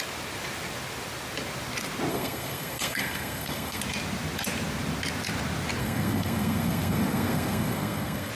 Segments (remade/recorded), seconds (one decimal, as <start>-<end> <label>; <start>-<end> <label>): 0.0-2.1 recorded; 2.1-3.8 remade; 3.8-5.8 recorded; 5.8-8.3 remade